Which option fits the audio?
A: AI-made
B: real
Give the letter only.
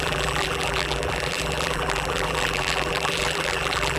A